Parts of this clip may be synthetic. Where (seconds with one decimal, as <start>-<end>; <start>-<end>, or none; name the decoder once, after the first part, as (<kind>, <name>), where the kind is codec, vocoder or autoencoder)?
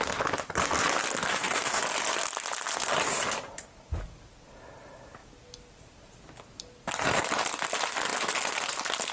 1.3-1.8 (codec, DAC)